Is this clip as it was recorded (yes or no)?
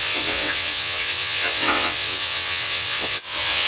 no